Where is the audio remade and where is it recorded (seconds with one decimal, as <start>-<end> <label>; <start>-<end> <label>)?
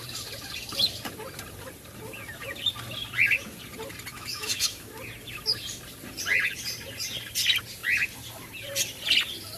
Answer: 0.0-4.1 recorded; 4.1-4.9 remade; 4.9-9.6 recorded